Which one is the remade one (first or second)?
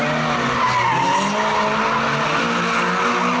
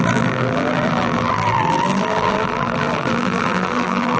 second